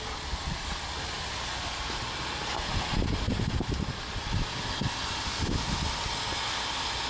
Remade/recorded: recorded